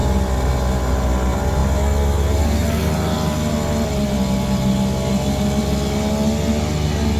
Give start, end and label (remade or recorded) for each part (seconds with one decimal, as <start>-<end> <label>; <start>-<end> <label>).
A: 0.0-0.7 remade; 0.7-7.2 recorded